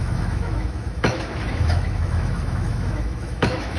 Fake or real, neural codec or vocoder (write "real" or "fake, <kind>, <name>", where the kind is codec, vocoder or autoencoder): fake, autoencoder, DAC-VAE